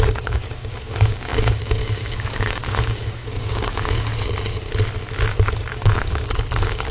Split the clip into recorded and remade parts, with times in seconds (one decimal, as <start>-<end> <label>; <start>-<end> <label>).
0.0-4.1 remade; 4.1-5.7 recorded; 5.7-6.9 remade